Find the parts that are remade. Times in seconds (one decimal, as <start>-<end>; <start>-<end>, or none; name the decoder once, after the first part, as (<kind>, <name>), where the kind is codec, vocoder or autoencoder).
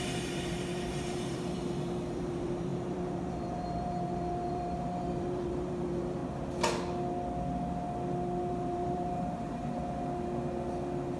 0.0-6.2 (vocoder, BigVGAN v2); 8.4-9.8